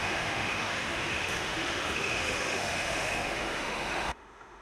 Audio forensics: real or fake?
fake